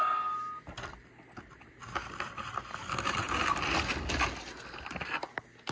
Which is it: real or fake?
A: real